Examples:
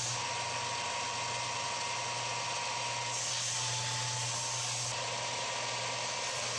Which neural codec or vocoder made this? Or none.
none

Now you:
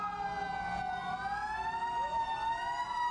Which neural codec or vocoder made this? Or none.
none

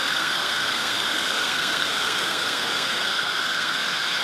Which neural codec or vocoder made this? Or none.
codec, SNAC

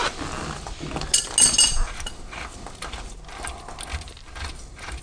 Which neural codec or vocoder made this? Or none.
none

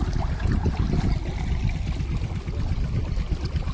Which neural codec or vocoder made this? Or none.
none